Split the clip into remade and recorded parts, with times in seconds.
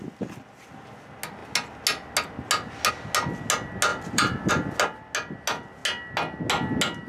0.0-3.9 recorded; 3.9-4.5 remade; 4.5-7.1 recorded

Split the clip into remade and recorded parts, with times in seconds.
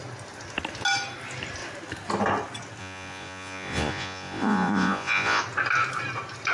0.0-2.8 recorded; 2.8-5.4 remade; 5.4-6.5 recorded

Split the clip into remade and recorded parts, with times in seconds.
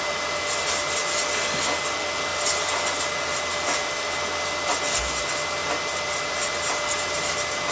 0.0-7.7 recorded